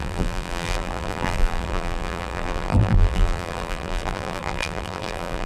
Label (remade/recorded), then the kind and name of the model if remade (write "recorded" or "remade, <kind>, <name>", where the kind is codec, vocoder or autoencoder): remade, vocoder, BigVGAN v2